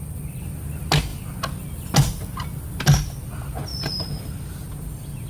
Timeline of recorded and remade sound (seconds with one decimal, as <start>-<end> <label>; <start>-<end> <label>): 0.0-5.3 recorded